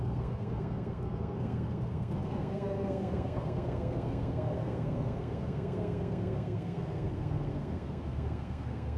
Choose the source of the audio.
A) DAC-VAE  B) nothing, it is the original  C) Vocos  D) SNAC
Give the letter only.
D